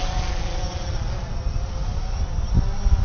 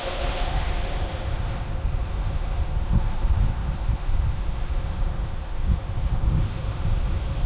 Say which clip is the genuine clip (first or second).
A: first